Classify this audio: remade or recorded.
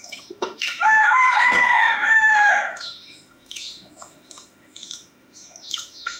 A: remade